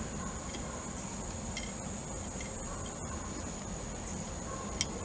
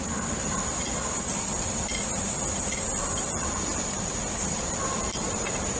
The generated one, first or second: second